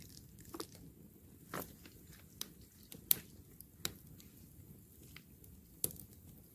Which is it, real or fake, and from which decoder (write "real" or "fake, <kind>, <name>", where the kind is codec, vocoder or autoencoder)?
real